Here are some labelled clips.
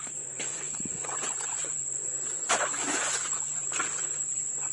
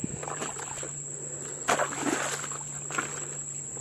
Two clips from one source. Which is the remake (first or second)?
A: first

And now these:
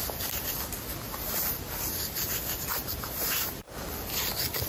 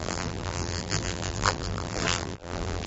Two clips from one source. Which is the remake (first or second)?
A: second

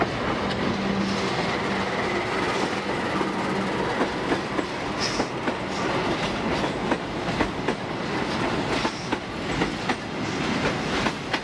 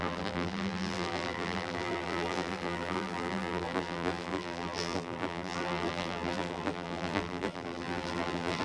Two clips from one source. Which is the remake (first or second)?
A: second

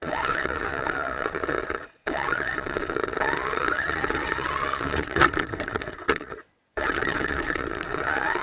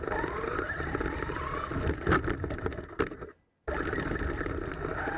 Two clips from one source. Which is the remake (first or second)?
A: first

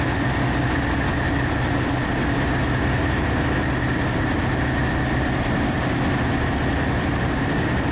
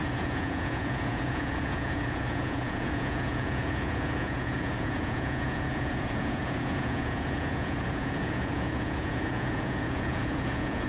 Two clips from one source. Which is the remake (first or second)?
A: second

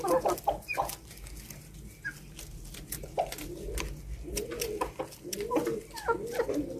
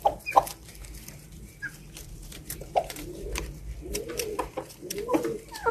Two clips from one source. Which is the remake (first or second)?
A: second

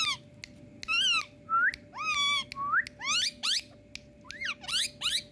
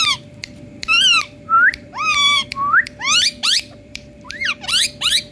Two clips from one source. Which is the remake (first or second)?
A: second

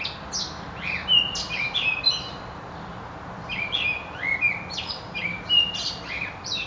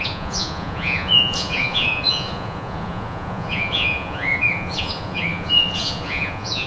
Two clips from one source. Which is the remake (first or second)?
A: second